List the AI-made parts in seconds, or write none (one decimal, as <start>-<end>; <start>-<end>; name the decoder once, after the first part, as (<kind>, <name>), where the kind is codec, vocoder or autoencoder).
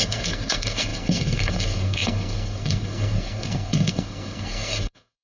0.0-5.2 (codec, SNAC)